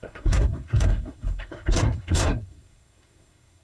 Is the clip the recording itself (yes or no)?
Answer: no